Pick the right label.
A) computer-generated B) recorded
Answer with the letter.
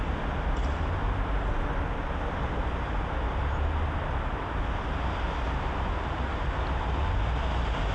B